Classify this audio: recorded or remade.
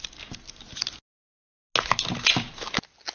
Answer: recorded